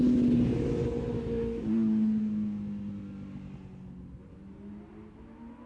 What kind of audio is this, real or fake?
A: real